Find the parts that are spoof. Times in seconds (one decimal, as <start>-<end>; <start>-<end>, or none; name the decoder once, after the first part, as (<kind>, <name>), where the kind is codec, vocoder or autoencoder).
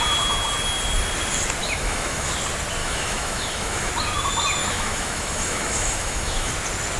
1.6-2.3 (autoencoder, DAC-VAE); 2.8-3.9; 4.6-6.5